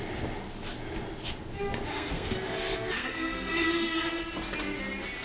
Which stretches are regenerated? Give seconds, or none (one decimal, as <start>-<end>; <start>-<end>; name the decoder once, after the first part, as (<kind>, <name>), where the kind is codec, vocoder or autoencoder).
1.9-4.2 (codec, SNAC)